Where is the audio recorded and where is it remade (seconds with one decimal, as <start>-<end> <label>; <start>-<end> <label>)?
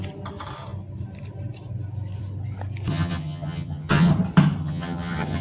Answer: 0.0-2.9 recorded; 2.9-4.1 remade; 4.1-4.6 recorded; 4.6-5.4 remade